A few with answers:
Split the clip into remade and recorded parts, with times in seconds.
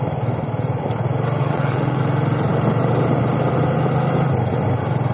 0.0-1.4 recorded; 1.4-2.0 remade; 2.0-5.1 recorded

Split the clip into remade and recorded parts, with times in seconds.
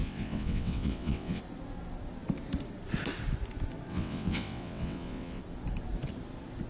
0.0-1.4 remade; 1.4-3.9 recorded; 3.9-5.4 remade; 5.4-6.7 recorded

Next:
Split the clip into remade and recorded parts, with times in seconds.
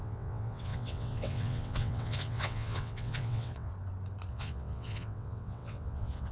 0.0-3.7 remade; 3.7-4.3 recorded; 4.3-6.3 remade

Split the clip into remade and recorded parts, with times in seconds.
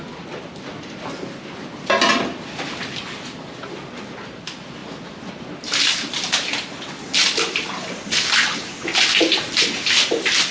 0.0-10.5 recorded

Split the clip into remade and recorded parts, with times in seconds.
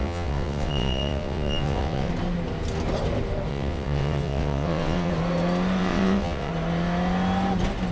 0.0-2.1 remade; 2.1-3.5 recorded; 3.5-5.1 remade; 5.1-5.8 recorded; 5.8-6.5 remade; 6.5-7.9 recorded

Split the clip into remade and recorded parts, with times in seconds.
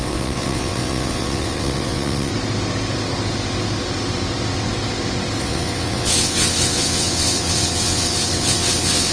0.0-2.3 remade; 2.3-5.4 recorded; 5.4-9.1 remade